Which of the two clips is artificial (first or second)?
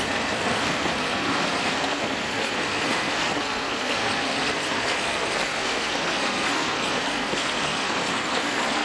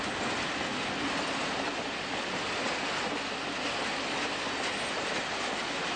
first